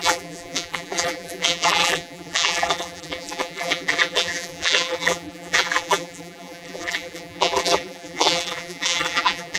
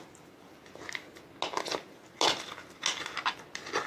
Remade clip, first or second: first